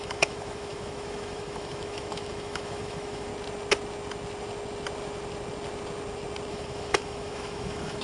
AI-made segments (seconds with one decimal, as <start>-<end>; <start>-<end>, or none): 0.0-3.3; 6.5-8.0